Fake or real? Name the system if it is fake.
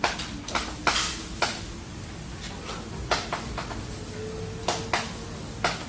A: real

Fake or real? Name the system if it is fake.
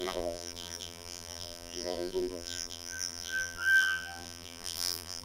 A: fake, vocoder, BigVGAN v2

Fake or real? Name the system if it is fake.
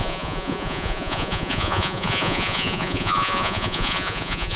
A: fake, vocoder, Vocos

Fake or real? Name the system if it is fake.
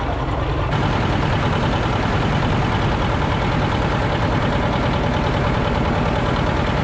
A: real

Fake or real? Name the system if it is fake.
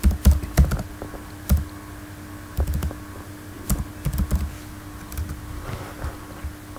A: real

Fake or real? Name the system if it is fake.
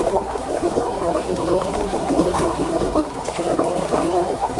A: fake, codec, SNAC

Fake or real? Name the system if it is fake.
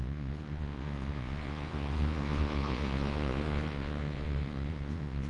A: fake, vocoder, Vocos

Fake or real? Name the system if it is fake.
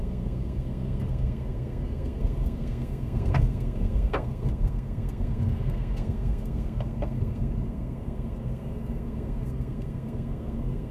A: fake, codec, SNAC